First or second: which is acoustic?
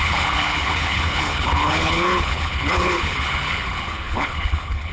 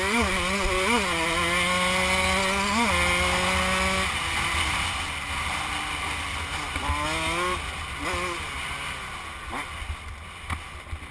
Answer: second